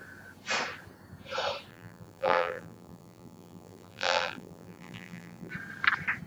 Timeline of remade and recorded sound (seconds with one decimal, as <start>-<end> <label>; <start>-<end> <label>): 0.0-1.7 recorded; 1.7-5.5 remade; 5.5-6.3 recorded